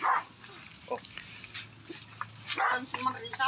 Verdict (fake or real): real